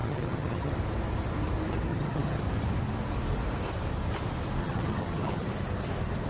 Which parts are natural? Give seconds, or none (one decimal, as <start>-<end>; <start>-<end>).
0.7-1.9; 2.4-4.6; 5.5-6.3

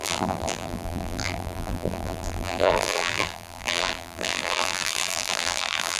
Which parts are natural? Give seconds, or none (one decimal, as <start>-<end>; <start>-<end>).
none

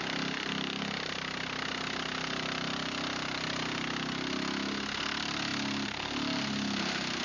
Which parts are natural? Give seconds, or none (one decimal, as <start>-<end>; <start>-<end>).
0.0-7.2

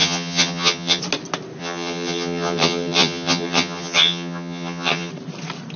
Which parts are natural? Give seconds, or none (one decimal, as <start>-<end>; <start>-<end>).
1.0-1.6; 5.1-5.8

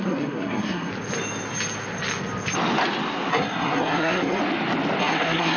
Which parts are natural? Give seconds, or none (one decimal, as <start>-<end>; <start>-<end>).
0.9-3.3; 4.4-5.0

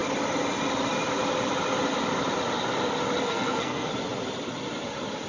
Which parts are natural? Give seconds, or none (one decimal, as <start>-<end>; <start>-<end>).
0.0-3.2; 3.9-5.3

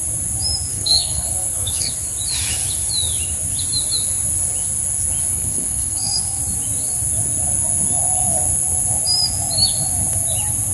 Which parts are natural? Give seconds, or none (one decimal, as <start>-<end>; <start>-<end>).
0.0-0.7; 1.9-5.3; 6.4-10.7